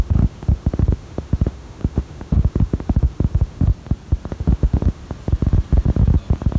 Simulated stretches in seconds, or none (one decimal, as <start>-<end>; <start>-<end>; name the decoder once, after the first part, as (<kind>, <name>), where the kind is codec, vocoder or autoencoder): 0.0-3.7 (autoencoder, DAC-VAE); 4.3-5.0

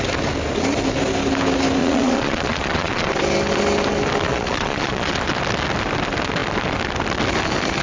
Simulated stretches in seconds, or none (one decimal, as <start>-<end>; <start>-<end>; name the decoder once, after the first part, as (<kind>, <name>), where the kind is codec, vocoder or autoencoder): 1.8-3.1 (vocoder, Vocos); 4.3-5.3

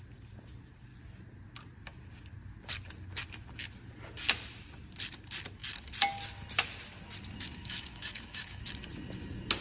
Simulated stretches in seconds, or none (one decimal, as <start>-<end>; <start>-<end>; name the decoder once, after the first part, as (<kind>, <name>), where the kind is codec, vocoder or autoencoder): 7.6-8.6 (autoencoder, DAC-VAE)

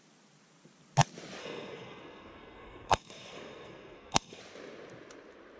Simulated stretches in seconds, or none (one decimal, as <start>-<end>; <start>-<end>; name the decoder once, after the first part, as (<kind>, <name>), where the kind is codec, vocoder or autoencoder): 1.4-4.4 (codec, SNAC)

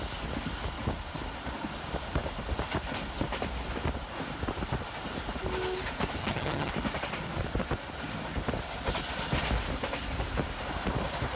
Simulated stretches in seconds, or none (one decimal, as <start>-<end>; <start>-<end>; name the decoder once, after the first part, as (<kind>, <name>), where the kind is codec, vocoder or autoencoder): 6.2-6.7 (vocoder, HiFi-GAN)